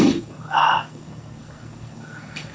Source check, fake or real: fake